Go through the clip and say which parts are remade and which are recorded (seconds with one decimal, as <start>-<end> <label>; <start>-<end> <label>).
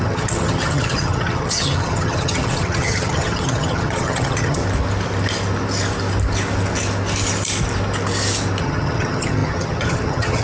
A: 0.0-4.6 remade; 4.6-8.6 recorded; 8.6-10.4 remade